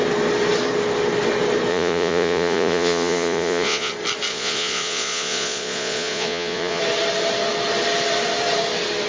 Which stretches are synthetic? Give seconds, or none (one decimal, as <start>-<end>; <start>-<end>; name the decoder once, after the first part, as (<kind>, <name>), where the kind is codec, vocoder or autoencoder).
1.7-3.9 (vocoder, Vocos); 4.3-6.8